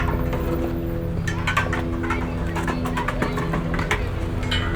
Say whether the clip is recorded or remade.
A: recorded